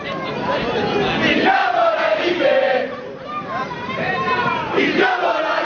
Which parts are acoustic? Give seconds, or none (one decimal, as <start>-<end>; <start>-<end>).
0.0-1.6; 5.0-5.6